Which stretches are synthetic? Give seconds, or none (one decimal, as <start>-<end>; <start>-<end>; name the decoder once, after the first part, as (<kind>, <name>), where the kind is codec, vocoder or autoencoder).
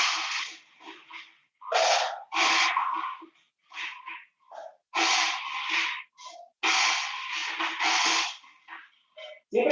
none